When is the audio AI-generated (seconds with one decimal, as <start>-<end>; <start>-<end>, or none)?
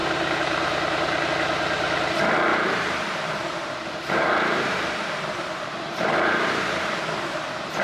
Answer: 0.0-1.3; 2.5-7.0